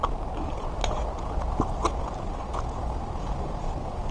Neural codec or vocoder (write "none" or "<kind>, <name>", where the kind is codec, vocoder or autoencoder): none